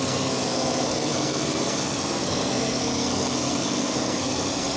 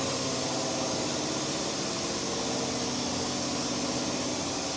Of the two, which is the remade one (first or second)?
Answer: first